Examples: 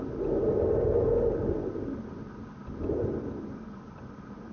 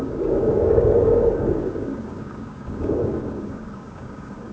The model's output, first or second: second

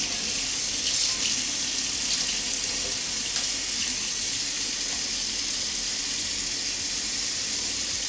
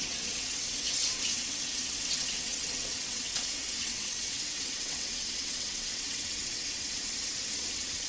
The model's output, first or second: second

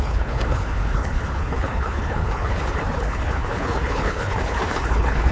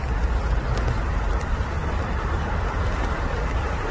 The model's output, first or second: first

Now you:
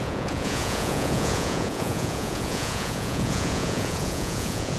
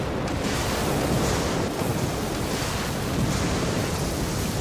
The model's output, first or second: first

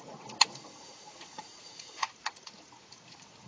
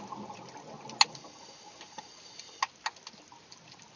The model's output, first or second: first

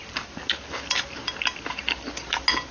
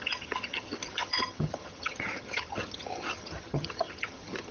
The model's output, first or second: second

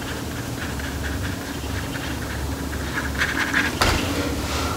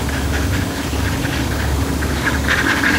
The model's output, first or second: second